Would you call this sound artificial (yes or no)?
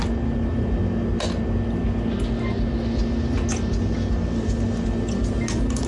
no